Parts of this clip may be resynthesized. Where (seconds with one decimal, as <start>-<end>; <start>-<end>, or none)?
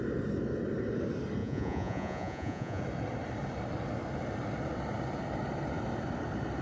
1.4-2.8